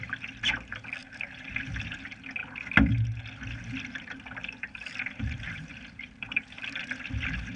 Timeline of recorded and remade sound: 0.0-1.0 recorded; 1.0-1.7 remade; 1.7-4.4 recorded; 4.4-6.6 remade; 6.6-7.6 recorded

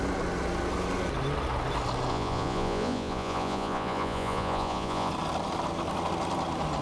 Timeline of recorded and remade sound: 0.0-2.1 recorded; 2.1-5.1 remade; 5.1-6.8 recorded

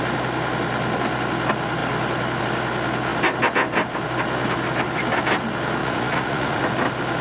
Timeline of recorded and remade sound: 0.0-5.8 recorded; 5.8-6.6 remade; 6.6-7.2 recorded

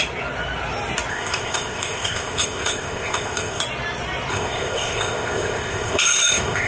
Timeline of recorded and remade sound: 0.0-1.1 recorded; 1.1-3.6 remade; 3.6-4.3 recorded; 4.3-6.7 remade